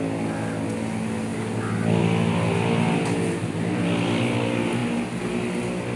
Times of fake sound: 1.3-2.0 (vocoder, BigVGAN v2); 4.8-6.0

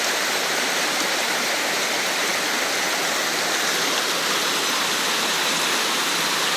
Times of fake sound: 0.0-2.3 (vocoder, BigVGAN v2); 4.5-6.6

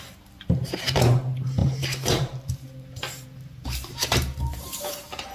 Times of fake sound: 0.0-5.3 (vocoder, BigVGAN v2)